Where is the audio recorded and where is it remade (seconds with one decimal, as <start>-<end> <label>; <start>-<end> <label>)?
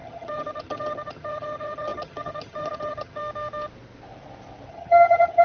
0.0-3.2 remade; 3.2-4.7 recorded; 4.7-5.4 remade